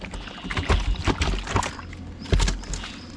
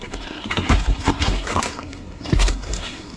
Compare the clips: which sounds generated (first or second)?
second